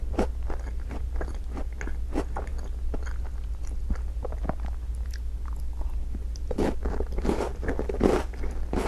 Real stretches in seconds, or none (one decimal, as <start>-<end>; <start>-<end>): 0.0-8.9